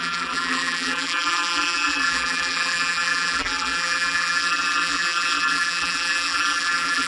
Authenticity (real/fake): fake